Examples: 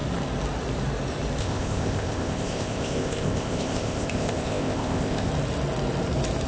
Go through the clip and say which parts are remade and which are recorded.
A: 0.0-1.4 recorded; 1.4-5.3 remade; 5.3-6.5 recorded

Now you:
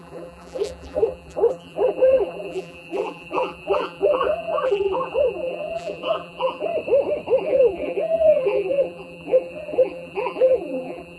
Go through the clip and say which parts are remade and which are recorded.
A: 0.0-6.7 remade; 6.7-7.4 recorded; 7.4-11.2 remade

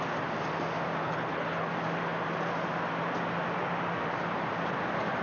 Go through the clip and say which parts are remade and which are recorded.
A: 0.0-1.0 recorded; 1.0-1.7 remade; 1.7-5.2 recorded

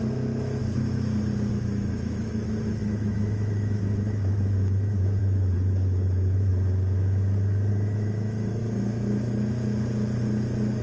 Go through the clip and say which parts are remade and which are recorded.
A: 0.0-0.6 remade; 0.6-1.5 recorded; 1.5-6.5 remade; 6.5-7.7 recorded; 7.7-8.6 remade; 8.6-10.8 recorded

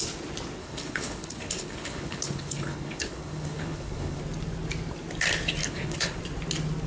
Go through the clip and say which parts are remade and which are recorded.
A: 0.0-0.6 recorded; 0.6-4.2 remade; 4.2-5.6 recorded; 5.6-6.2 remade; 6.2-6.9 recorded

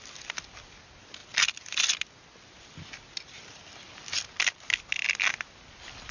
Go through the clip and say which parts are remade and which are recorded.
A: 0.0-6.1 recorded